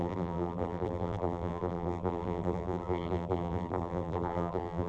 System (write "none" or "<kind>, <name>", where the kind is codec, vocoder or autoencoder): vocoder, BigVGAN v2